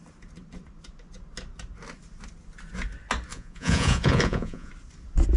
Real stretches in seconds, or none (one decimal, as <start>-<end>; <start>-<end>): 0.0-3.3; 4.7-5.4